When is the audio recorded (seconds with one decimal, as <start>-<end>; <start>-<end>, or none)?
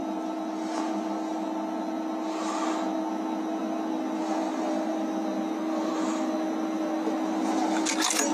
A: 0.0-8.3